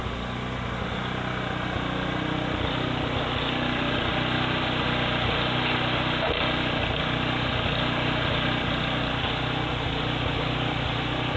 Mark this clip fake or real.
real